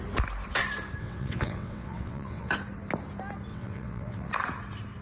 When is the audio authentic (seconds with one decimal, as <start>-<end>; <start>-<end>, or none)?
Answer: 0.0-1.0; 2.5-3.5; 4.3-5.0

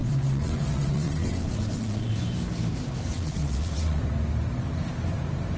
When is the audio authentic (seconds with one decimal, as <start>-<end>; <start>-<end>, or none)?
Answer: 2.2-3.0; 4.0-5.6

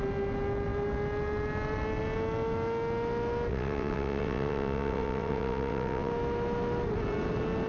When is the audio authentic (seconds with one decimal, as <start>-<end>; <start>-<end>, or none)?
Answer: 0.0-3.5; 6.1-7.7

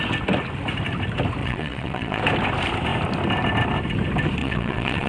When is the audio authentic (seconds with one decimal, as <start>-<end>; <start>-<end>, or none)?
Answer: 0.0-1.4; 2.2-4.4

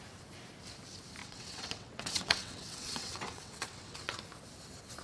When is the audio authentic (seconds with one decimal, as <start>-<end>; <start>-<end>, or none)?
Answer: 0.0-1.2; 4.2-5.0

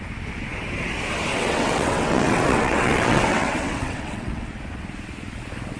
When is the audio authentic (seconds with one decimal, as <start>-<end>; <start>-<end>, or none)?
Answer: 0.0-1.3; 4.5-5.8